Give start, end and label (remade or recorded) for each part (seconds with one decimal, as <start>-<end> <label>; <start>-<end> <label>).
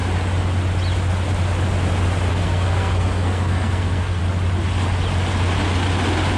0.0-2.3 recorded; 2.3-4.2 remade; 4.2-6.4 recorded